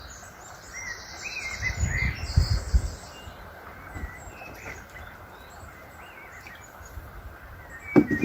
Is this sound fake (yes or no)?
no